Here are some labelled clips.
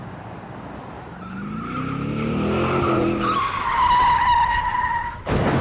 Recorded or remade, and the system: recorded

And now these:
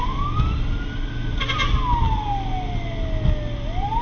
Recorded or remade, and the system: recorded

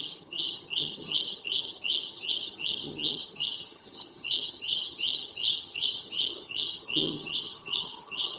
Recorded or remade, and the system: remade, vocoder, HiFi-GAN